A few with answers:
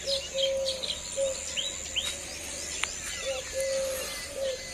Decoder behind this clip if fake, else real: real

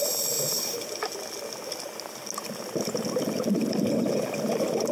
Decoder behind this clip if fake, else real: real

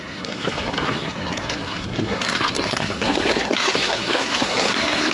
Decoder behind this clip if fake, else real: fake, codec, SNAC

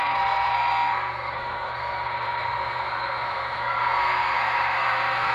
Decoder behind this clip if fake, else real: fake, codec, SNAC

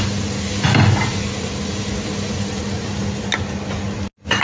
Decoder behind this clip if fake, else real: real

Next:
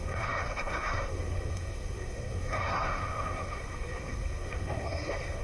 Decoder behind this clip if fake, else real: fake, codec, SNAC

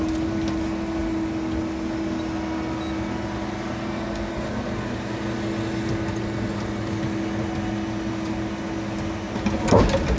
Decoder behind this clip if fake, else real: real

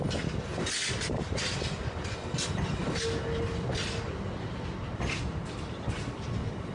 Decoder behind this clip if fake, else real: real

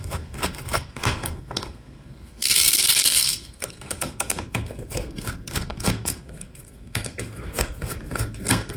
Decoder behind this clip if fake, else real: fake, codec, SNAC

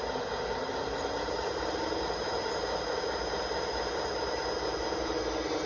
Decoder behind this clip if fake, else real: real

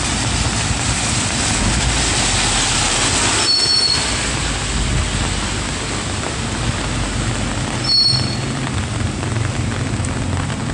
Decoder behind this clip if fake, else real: real